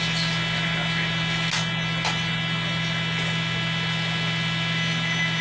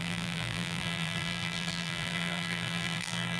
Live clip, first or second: first